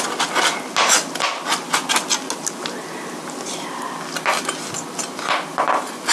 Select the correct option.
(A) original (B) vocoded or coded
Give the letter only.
A